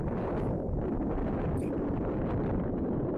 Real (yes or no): yes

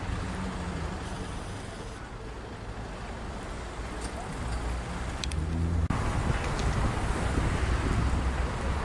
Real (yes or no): yes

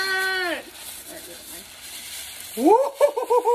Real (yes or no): yes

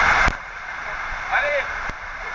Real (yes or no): no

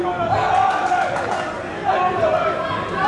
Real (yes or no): yes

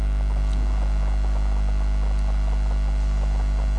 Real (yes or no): yes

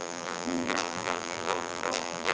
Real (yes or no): no